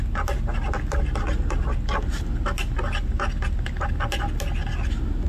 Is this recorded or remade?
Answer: recorded